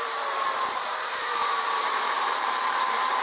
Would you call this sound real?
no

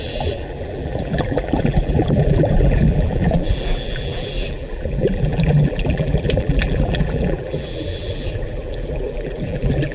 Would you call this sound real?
no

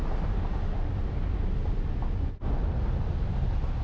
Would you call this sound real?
yes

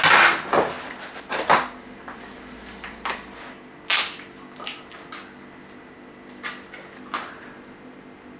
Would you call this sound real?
yes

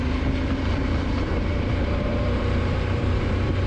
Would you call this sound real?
no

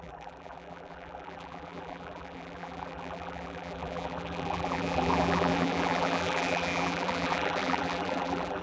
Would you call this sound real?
no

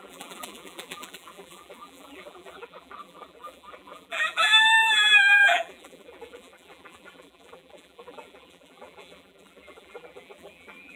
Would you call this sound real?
no